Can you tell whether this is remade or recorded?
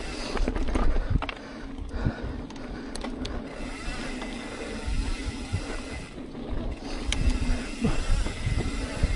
recorded